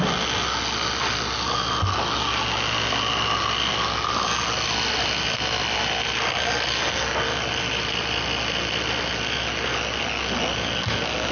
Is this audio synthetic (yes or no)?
no